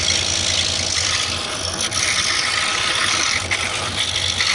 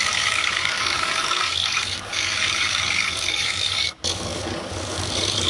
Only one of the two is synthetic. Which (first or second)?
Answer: second